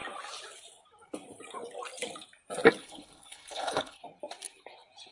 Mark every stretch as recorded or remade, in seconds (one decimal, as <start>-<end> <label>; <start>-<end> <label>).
0.0-2.8 recorded; 2.8-4.0 remade; 4.0-5.1 recorded

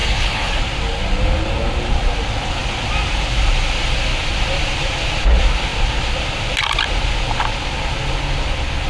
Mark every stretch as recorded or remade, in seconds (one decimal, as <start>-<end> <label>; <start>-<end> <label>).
0.0-0.6 remade; 0.6-8.9 recorded

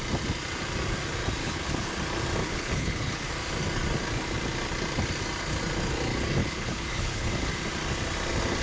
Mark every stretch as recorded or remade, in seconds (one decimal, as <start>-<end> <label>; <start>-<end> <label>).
0.0-1.4 recorded; 1.4-1.9 remade; 1.9-2.4 recorded; 2.4-3.3 remade; 3.3-6.4 recorded; 6.4-7.3 remade; 7.3-8.6 recorded

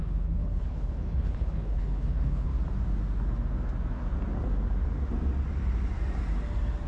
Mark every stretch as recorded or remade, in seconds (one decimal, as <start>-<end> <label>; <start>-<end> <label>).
0.0-2.5 remade; 2.5-6.9 recorded

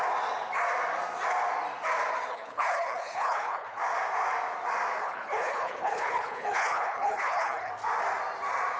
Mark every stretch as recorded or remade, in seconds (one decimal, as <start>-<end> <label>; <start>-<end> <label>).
0.0-2.3 recorded; 2.3-3.8 remade; 3.8-5.0 recorded; 5.0-7.7 remade; 7.7-8.8 recorded

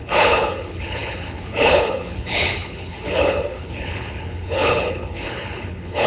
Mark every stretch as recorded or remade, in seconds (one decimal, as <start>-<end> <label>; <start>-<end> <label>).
0.0-6.1 remade